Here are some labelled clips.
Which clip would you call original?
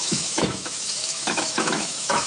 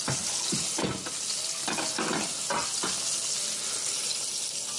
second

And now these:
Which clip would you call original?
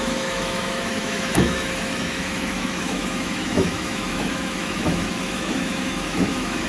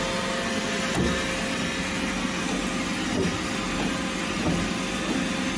second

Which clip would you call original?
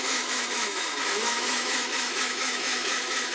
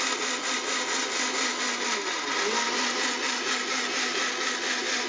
second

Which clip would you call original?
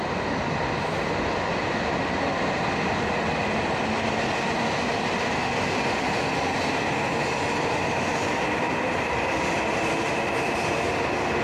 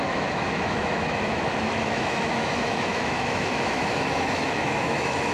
first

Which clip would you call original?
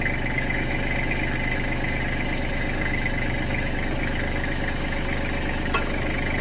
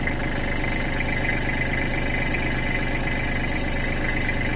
second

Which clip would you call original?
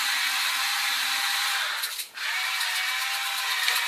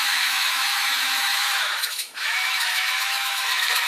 first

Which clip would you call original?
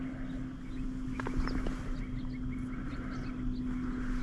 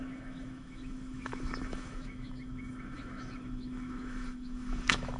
first